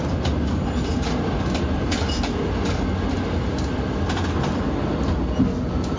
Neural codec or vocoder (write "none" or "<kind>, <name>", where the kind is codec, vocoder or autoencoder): none